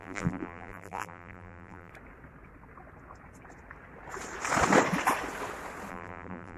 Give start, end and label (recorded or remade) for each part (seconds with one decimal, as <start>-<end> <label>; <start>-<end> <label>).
0.0-1.9 remade; 1.9-5.9 recorded; 5.9-6.6 remade